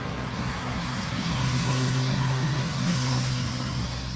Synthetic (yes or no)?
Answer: yes